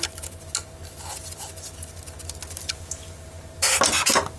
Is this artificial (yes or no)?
no